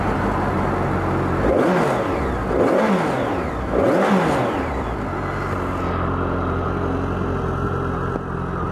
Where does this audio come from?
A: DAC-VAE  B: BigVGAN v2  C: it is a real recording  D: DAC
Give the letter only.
C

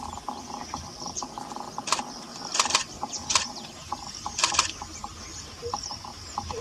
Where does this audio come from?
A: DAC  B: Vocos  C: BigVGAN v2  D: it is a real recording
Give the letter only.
C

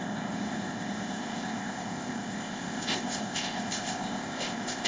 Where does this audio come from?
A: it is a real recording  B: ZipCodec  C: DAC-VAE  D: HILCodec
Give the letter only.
B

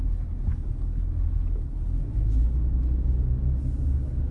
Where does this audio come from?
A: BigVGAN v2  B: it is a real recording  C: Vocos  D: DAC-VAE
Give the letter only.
B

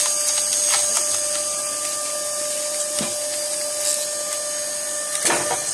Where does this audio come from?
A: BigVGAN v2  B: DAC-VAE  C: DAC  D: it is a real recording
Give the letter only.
D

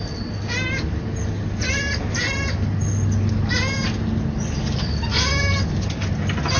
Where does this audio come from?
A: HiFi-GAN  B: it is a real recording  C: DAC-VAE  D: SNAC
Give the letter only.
B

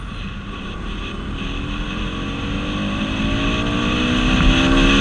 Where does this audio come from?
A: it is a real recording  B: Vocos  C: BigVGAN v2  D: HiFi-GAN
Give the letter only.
A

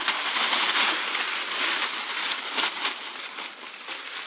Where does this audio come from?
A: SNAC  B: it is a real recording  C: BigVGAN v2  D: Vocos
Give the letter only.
B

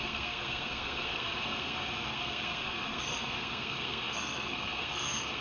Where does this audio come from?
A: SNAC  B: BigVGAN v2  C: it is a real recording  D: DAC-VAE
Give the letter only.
A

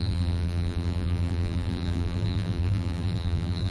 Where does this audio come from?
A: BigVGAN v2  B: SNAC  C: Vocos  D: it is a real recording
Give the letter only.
A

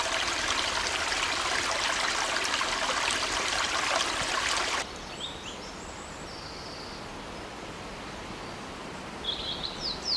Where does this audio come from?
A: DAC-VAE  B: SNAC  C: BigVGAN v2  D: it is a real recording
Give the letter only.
D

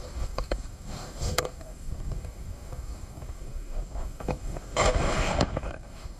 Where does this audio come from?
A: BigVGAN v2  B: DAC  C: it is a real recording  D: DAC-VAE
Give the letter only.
B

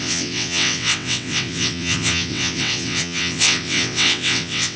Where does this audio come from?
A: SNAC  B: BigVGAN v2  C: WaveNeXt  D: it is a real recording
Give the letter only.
C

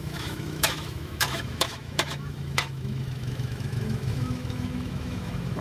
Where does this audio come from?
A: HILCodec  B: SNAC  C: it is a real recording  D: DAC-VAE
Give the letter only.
D